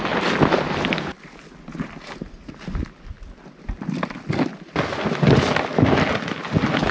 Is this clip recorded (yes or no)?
yes